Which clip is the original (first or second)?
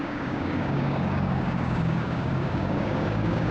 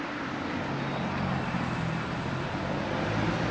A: second